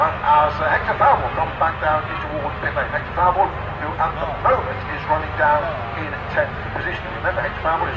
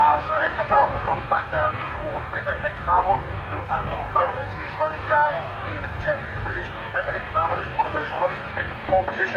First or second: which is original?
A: first